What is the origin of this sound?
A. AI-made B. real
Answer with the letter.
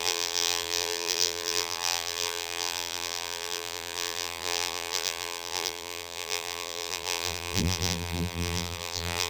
A